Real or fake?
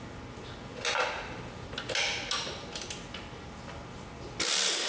real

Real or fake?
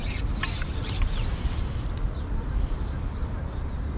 real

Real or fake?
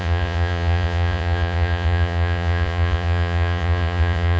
fake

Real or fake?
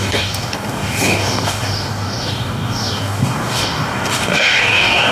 fake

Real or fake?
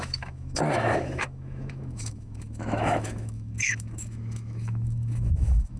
fake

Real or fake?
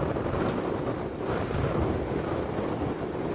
real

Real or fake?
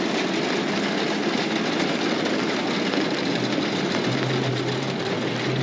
real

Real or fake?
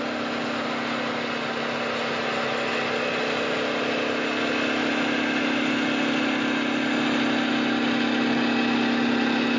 real